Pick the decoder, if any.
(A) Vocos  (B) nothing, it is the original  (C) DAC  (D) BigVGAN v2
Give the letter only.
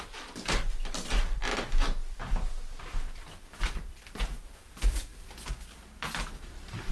D